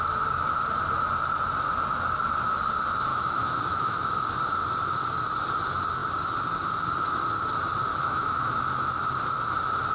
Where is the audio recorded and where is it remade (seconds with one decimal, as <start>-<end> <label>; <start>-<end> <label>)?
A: 0.0-3.1 recorded; 3.1-4.0 remade; 4.0-7.9 recorded; 7.9-8.5 remade; 8.5-9.9 recorded